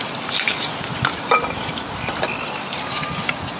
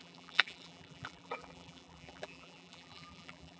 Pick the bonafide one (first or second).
first